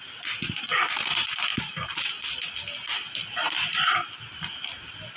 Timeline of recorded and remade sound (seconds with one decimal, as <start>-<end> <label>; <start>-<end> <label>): 0.0-5.2 recorded